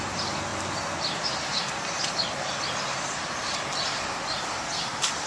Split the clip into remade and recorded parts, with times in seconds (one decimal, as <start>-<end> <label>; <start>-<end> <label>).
0.0-5.3 recorded